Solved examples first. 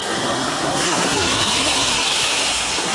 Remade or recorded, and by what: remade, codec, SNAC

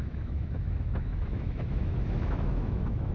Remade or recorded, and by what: remade, autoencoder, DAC-VAE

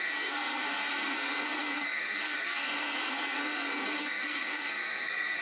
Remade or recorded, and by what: remade, codec, SNAC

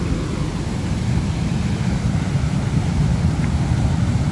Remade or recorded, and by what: recorded